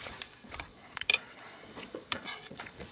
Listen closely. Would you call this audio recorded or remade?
remade